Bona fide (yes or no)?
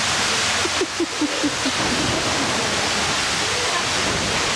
yes